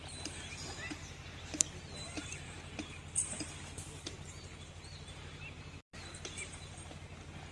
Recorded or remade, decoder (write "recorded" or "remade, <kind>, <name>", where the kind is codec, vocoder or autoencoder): remade, vocoder, BigVGAN v2